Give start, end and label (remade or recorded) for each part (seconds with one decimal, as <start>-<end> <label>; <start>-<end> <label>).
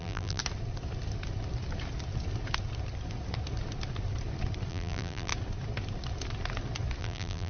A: 0.0-0.4 remade; 0.4-4.7 recorded; 4.7-5.3 remade; 5.3-7.0 recorded; 7.0-7.5 remade